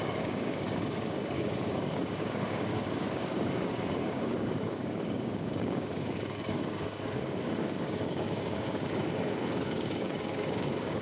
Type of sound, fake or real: fake